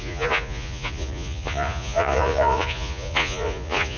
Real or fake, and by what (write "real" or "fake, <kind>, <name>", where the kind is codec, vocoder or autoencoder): fake, vocoder, Vocos